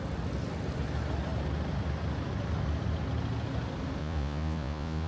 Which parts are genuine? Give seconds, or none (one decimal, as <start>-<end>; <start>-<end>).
0.0-4.0